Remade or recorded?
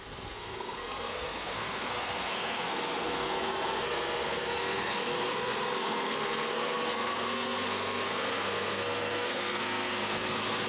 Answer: remade